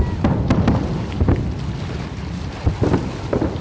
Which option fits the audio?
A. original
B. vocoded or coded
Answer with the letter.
A